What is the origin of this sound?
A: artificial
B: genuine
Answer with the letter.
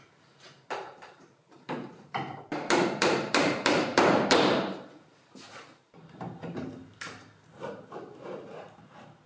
A